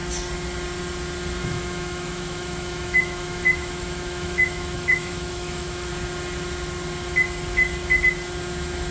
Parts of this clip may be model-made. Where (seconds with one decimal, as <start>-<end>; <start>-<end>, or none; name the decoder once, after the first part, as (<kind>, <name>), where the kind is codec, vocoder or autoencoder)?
1.4-5.9 (autoencoder, DAC-VAE)